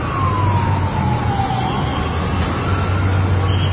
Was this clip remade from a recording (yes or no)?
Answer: no